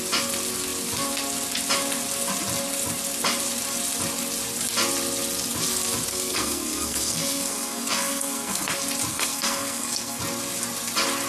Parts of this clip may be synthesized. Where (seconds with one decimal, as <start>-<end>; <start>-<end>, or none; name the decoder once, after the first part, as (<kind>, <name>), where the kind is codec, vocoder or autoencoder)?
6.1-8.7 (codec, SNAC); 9.1-10.2